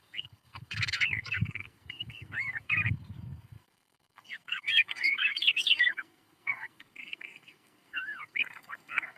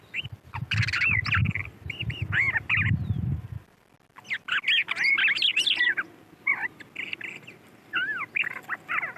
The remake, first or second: first